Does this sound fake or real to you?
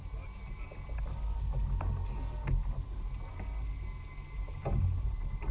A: real